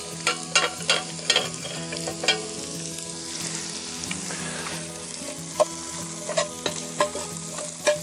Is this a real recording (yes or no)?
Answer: yes